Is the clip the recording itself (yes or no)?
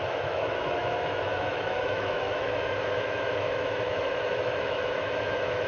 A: no